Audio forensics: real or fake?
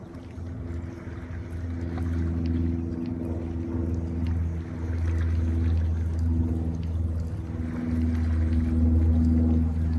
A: real